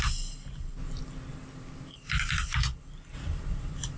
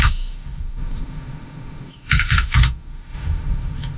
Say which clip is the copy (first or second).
second